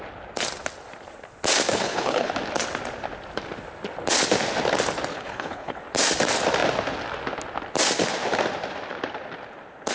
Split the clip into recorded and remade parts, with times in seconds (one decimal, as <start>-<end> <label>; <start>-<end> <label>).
0.0-1.7 recorded; 1.7-2.3 remade; 2.3-5.1 recorded; 5.1-5.8 remade; 5.8-9.9 recorded